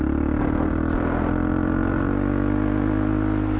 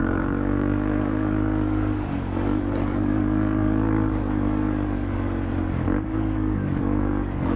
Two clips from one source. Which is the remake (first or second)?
second